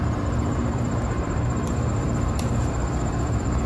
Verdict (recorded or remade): remade